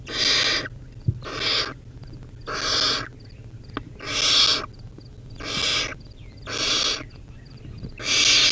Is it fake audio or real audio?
real